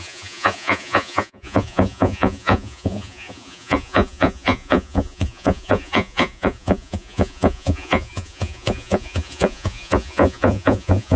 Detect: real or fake fake